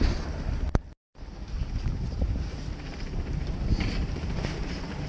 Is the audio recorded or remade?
recorded